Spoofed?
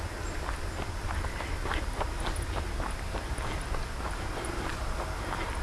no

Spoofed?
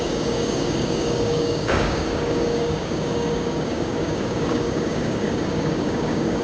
yes